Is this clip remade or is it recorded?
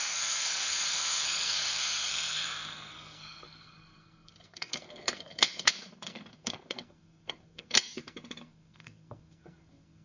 remade